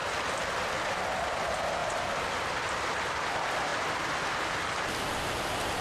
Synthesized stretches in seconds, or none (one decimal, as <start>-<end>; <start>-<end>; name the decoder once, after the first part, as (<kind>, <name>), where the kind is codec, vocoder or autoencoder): 1.8-2.7 (vocoder, BigVGAN v2)

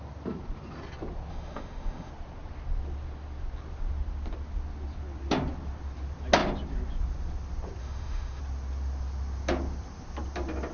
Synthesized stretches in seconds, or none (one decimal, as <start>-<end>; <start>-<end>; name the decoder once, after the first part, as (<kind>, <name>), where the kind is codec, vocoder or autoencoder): 1.3-2.1 (autoencoder, DAC-VAE); 7.8-8.4

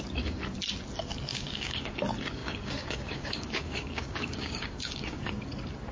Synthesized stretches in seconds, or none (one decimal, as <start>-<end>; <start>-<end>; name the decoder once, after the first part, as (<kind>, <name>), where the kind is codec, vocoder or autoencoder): 1.3-1.9 (codec, DAC); 2.4-5.3

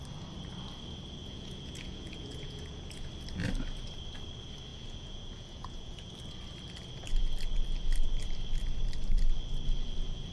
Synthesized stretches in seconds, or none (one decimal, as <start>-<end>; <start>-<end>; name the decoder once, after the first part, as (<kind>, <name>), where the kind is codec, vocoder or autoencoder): 1.2-3.1 (vocoder, Vocos); 4.7-6.1

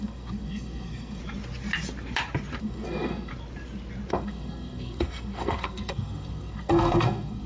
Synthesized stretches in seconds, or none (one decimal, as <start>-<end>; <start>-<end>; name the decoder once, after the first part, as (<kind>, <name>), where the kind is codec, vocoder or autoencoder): 0.0-1.2 (codec, SNAC); 2.6-3.3; 4.1-7.5